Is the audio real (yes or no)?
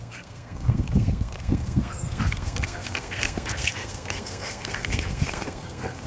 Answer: no